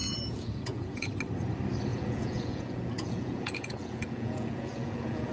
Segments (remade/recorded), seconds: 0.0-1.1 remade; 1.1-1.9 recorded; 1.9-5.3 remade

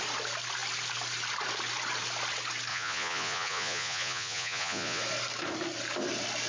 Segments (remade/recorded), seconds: 0.0-2.7 recorded; 2.7-5.0 remade; 5.0-6.5 recorded

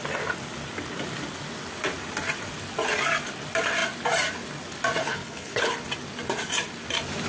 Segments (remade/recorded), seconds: 0.0-5.0 recorded; 5.0-5.7 remade; 5.7-7.3 recorded

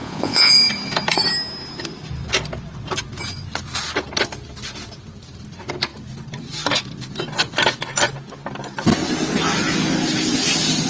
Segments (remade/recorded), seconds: 0.0-0.5 remade; 0.5-10.9 recorded

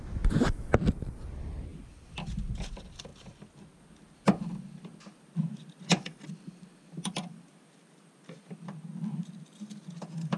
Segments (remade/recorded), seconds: 0.0-10.4 recorded

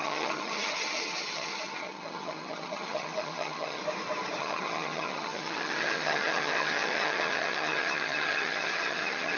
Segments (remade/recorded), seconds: 0.0-3.8 remade; 3.8-4.4 recorded; 4.4-9.4 remade

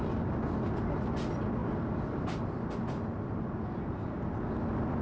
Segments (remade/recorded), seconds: 0.0-5.0 recorded